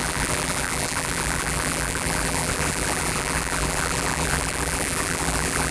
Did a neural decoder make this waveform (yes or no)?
yes